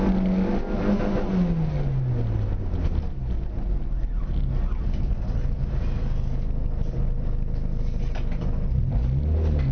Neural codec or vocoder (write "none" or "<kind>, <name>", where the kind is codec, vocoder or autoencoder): none